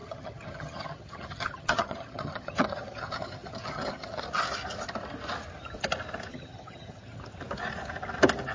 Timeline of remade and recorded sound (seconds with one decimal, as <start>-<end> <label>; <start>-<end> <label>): 0.0-4.2 remade; 4.2-6.3 recorded; 6.3-7.2 remade; 7.2-8.5 recorded